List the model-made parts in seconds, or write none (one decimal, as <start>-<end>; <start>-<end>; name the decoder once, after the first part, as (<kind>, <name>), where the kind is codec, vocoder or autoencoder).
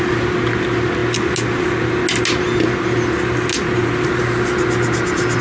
none